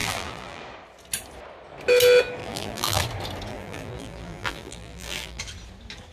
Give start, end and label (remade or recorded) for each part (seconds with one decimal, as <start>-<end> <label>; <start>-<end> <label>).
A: 0.0-0.6 remade; 0.6-2.4 recorded; 2.4-3.0 remade; 3.0-3.5 recorded; 3.5-5.4 remade; 5.4-6.1 recorded